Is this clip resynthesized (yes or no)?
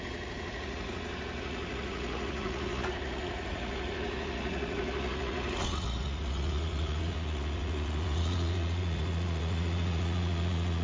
yes